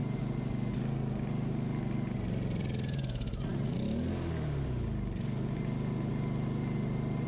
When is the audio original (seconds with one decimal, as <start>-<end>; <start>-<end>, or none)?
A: 0.0-7.3